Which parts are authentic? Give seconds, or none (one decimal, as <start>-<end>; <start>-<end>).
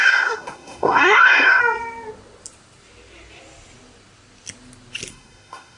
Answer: 1.6-5.1